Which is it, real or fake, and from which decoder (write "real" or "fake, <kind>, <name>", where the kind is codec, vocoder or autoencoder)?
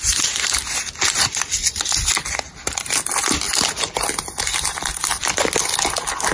real